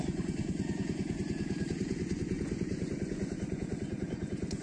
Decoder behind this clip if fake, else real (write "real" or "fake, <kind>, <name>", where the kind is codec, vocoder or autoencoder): fake, vocoder, Vocos